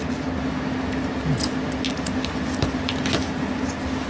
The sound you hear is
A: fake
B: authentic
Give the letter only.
B